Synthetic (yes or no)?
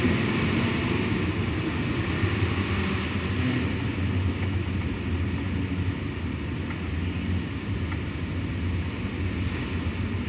no